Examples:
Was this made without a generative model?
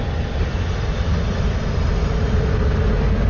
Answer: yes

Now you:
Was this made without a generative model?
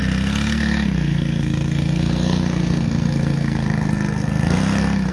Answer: no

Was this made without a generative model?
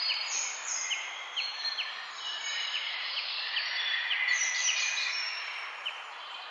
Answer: no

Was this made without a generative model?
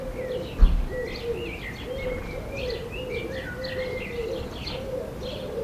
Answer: yes